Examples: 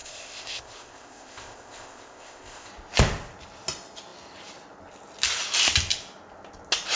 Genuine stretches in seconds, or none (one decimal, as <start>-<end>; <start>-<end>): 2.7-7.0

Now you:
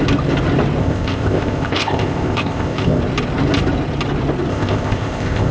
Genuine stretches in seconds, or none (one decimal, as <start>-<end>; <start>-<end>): 0.0-0.8; 3.0-4.5

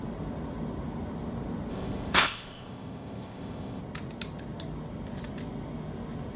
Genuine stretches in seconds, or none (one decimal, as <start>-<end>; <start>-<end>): 0.0-1.7; 3.8-6.4

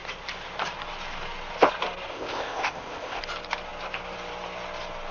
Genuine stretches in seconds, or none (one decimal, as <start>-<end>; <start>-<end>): 0.0-2.1; 3.2-5.1